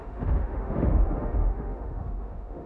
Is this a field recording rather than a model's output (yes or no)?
no